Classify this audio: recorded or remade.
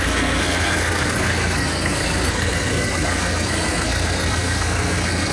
remade